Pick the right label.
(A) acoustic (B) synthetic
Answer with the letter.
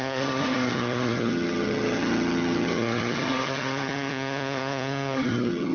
B